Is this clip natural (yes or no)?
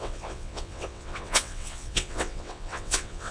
no